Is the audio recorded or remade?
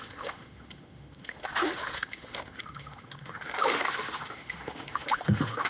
remade